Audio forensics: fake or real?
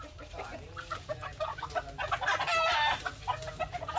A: real